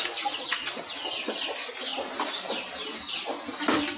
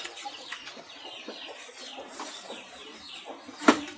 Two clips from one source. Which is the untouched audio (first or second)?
first